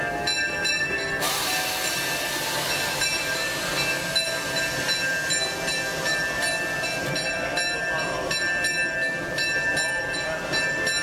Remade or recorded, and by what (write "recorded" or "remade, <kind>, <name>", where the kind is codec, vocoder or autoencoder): recorded